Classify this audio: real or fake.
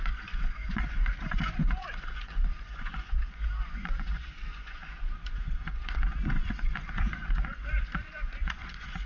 fake